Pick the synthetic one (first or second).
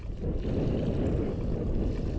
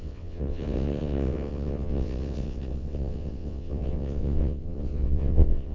second